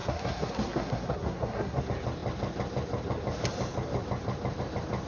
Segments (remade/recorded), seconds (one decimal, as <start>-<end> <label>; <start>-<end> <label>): 0.0-1.8 remade; 1.8-5.1 recorded